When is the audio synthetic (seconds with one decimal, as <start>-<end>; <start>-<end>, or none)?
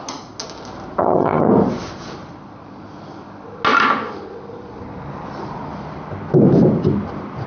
1.0-1.5